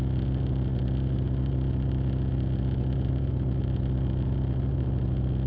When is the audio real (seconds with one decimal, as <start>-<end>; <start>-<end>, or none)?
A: 0.0-5.5